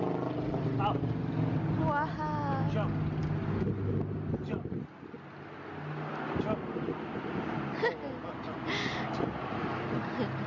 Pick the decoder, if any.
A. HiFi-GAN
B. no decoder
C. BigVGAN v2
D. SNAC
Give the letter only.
B